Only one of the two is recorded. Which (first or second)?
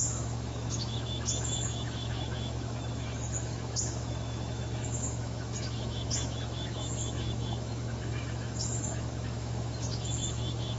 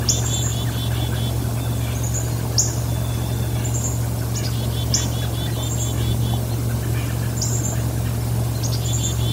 second